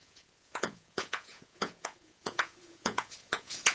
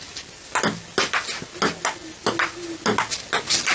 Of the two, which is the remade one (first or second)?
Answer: first